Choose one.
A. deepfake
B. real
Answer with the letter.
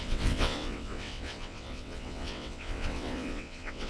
A